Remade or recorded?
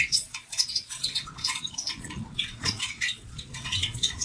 remade